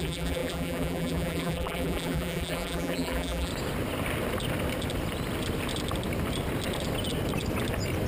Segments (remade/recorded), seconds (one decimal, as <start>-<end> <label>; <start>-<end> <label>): 0.0-3.5 remade; 3.5-8.1 recorded